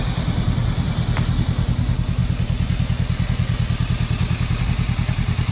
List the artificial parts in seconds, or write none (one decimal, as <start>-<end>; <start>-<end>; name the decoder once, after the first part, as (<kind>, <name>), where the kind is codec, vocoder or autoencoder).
none